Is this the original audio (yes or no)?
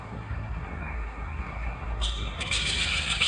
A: no